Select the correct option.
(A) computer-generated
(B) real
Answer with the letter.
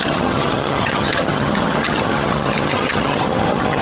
A